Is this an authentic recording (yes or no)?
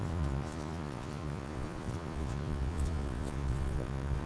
no